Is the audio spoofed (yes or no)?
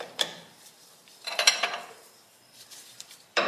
yes